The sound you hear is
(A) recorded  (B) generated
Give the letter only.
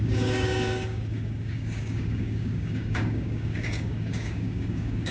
B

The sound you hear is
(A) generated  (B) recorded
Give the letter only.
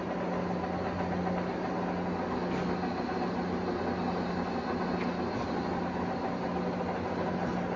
B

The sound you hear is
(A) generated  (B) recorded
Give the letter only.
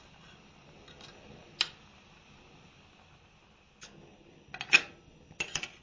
B